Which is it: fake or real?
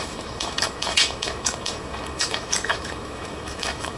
fake